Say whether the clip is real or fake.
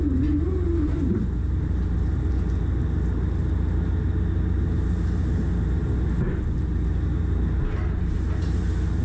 real